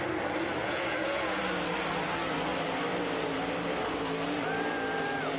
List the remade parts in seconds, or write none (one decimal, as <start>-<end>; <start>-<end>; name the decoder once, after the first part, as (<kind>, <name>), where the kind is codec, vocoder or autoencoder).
0.6-1.4 (vocoder, Vocos)